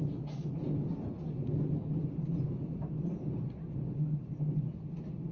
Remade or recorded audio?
recorded